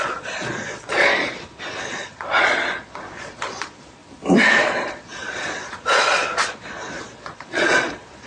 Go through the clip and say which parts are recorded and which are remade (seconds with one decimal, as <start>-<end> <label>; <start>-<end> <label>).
0.0-4.0 remade; 4.0-4.6 recorded; 4.6-8.3 remade